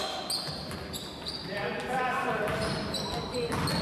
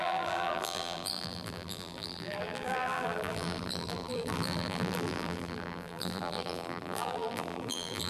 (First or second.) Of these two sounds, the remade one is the second